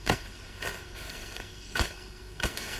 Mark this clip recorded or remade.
remade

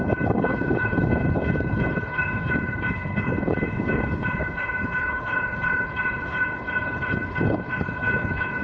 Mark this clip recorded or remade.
remade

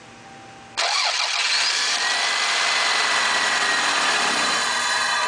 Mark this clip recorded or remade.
recorded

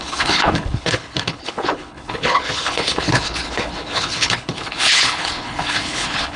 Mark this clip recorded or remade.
remade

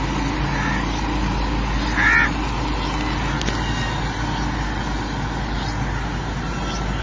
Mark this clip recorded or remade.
recorded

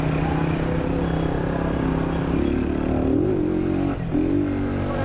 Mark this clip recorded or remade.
recorded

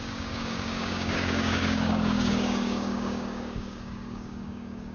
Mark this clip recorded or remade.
remade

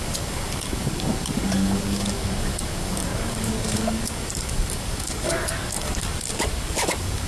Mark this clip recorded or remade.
remade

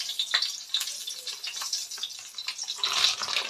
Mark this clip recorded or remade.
recorded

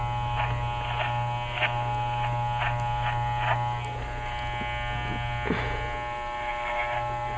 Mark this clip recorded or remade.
recorded